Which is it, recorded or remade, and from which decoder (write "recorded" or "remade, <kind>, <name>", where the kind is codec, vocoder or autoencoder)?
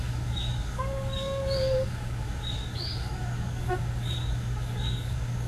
remade, codec, DAC